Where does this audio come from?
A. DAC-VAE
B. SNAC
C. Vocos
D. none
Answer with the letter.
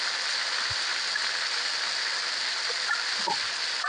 D